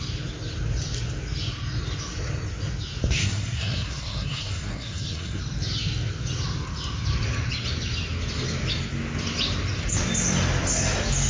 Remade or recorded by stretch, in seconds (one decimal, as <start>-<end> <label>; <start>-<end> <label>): 0.0-3.2 recorded; 3.2-5.4 remade; 5.4-11.3 recorded